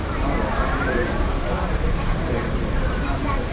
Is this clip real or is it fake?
fake